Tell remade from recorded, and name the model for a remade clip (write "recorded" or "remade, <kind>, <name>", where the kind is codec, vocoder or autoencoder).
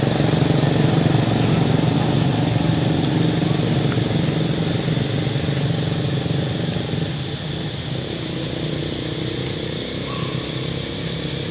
recorded